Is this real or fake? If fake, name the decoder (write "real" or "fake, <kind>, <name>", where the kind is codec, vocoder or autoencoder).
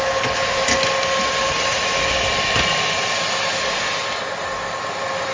real